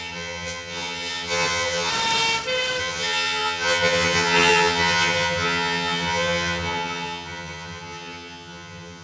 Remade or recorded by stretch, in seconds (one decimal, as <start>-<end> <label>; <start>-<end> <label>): 0.0-1.9 remade; 1.9-2.8 recorded; 2.8-9.0 remade